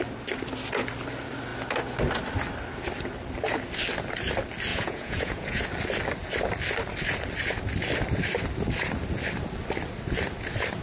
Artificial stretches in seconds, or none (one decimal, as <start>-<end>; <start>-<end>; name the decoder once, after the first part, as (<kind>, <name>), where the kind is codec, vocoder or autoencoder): 4.7-5.6 (vocoder, Vocos)